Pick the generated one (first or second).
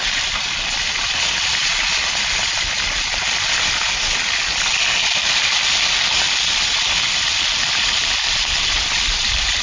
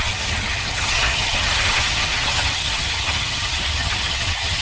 second